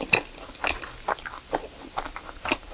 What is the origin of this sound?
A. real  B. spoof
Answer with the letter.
A